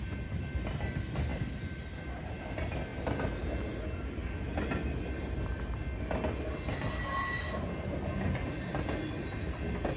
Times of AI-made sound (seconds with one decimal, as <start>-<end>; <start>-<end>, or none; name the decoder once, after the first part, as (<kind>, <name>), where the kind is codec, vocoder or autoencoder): 1.3-2.2 (vocoder, BigVGAN v2)